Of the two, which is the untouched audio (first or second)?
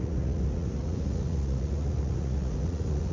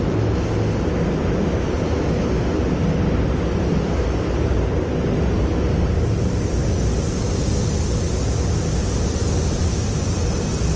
second